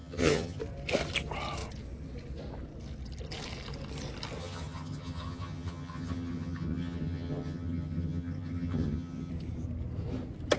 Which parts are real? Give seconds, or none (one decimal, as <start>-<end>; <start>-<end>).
0.6-4.4; 9.3-10.6